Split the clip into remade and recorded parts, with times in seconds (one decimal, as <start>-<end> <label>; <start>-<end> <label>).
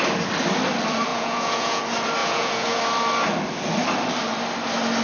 0.0-1.1 recorded; 1.1-1.8 remade; 1.8-2.2 recorded; 2.2-2.8 remade; 2.8-5.0 recorded